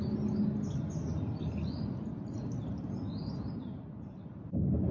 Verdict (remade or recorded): recorded